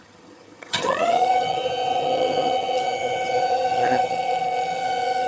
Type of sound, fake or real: fake